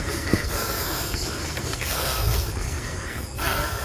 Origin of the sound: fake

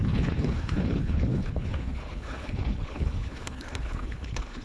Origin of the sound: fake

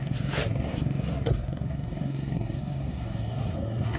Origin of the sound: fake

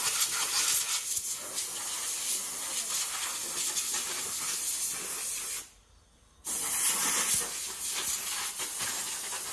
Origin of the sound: real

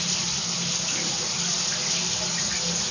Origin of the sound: real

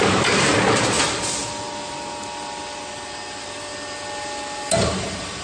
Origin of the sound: real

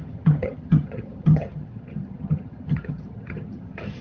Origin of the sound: fake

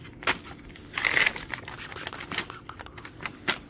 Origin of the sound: real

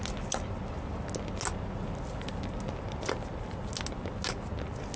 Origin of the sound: real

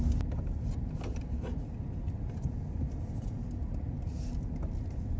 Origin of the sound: real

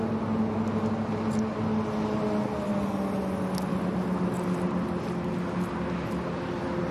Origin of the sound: real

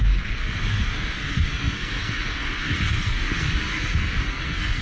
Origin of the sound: fake